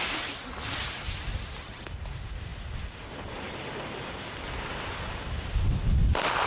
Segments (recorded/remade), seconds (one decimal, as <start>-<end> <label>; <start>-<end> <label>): 0.0-6.5 recorded